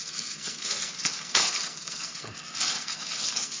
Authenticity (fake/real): fake